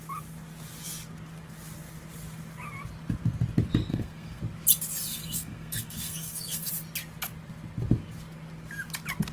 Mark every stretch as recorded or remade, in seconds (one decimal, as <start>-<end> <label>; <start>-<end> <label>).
0.0-3.9 recorded; 3.9-4.4 remade; 4.4-5.1 recorded; 5.1-6.7 remade; 6.7-9.3 recorded